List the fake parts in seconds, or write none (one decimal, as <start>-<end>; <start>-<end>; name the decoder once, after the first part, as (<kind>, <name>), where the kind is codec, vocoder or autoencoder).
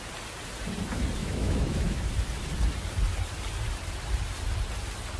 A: 1.2-2.1 (autoencoder, DAC-VAE)